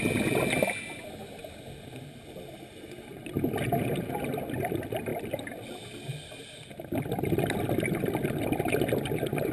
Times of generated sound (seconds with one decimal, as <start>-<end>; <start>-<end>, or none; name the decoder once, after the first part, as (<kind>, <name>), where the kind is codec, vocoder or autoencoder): none